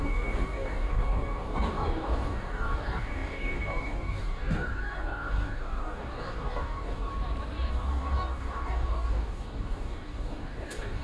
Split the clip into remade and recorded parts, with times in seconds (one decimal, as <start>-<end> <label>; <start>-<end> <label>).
0.0-7.1 remade; 7.1-7.7 recorded; 7.7-11.0 remade

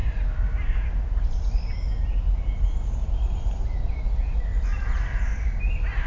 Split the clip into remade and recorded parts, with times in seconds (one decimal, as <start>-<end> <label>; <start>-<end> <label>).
0.0-6.1 recorded